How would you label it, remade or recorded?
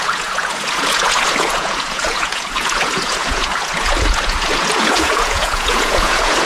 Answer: remade